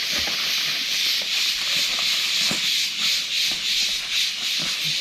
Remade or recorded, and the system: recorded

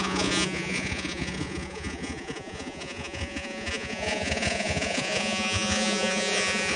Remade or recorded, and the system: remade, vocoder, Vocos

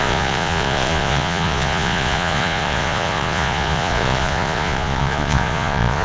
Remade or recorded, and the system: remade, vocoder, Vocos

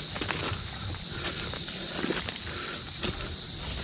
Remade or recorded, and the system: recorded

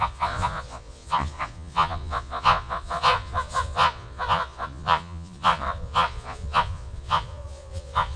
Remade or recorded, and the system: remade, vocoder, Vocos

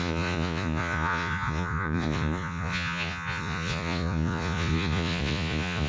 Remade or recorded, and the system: remade, vocoder, Vocos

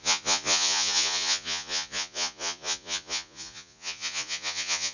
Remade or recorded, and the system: remade, vocoder, Vocos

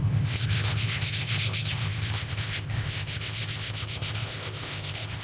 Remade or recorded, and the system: remade, codec, ZipCodec